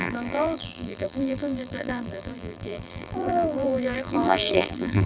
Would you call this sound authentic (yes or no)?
no